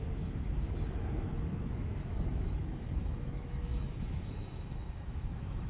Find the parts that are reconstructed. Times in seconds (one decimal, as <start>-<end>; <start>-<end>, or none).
0.0-5.7